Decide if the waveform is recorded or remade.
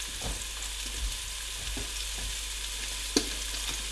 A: recorded